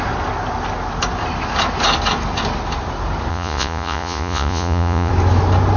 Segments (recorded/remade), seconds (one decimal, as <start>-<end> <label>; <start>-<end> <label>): 0.0-3.3 recorded; 3.3-5.1 remade; 5.1-5.8 recorded